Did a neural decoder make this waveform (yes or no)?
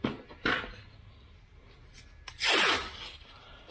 no